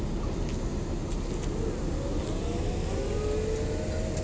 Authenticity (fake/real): real